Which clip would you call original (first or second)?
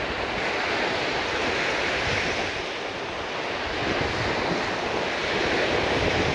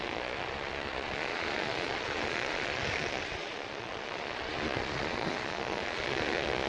first